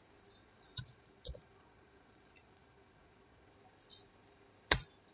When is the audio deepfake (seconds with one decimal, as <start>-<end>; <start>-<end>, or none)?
0.4-3.5